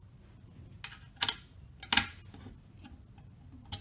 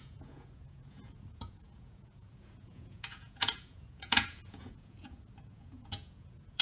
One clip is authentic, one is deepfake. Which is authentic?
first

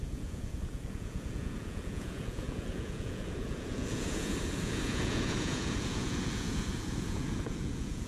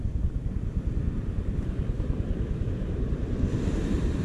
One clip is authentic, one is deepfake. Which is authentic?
second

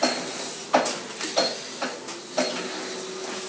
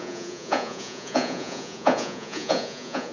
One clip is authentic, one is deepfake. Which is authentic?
first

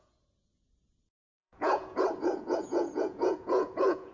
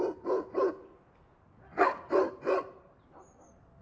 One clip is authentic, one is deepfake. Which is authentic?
second